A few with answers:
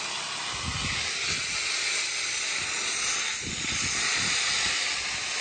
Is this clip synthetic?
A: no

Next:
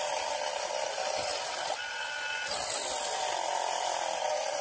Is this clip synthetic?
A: no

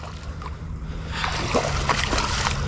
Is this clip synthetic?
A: no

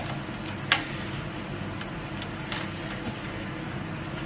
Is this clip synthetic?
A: no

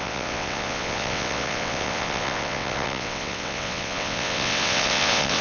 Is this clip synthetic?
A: yes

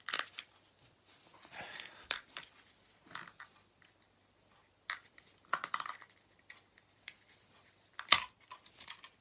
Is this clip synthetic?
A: no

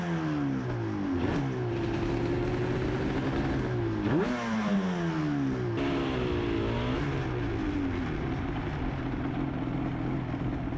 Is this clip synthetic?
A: no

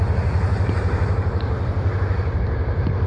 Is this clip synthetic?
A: no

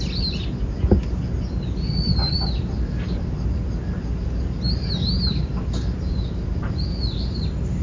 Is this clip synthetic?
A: no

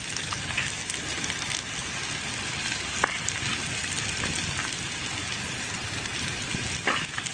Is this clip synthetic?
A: no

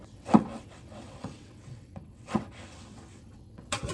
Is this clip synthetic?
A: yes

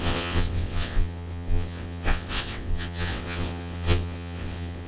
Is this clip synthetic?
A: yes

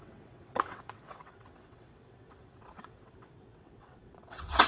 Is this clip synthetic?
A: yes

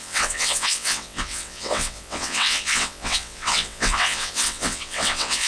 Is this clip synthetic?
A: yes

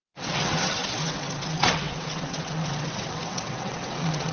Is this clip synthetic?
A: yes